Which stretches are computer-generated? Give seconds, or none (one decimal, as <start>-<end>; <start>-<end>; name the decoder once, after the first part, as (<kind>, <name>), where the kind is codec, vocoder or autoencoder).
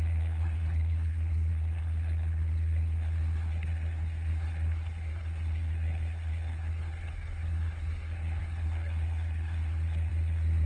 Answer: 0.0-10.7 (codec, SNAC)